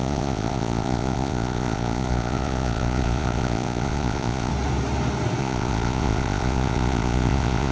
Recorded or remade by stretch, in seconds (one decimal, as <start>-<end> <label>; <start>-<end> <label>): 0.0-4.5 remade; 4.5-5.4 recorded; 5.4-7.7 remade